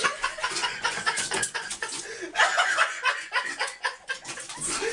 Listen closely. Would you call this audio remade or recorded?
remade